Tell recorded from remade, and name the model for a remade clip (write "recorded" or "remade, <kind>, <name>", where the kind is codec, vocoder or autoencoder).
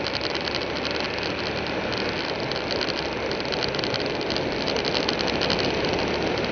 recorded